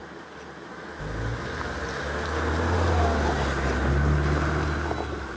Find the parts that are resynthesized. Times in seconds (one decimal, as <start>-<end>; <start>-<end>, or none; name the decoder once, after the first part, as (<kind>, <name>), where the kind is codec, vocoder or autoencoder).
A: none